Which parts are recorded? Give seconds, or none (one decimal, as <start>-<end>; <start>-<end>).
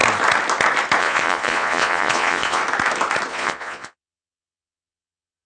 0.0-1.0; 2.6-3.3